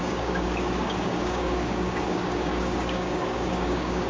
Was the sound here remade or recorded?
remade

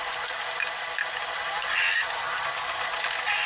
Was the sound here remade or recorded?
recorded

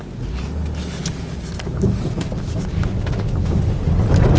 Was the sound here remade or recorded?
recorded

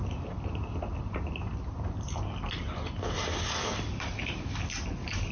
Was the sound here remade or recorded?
recorded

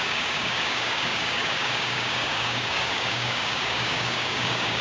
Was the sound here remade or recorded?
remade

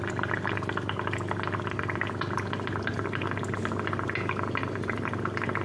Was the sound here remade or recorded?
recorded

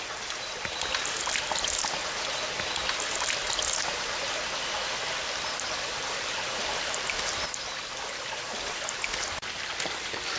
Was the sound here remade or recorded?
recorded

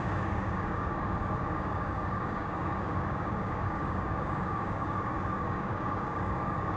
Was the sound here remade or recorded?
remade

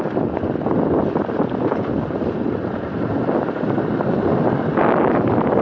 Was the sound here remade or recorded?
recorded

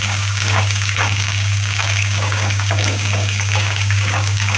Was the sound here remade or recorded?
remade